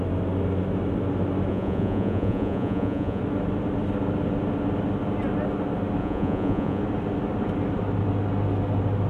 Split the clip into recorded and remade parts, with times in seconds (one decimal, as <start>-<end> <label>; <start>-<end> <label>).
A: 0.0-1.5 recorded; 1.5-3.2 remade; 3.2-6.0 recorded; 6.0-6.8 remade; 6.8-9.1 recorded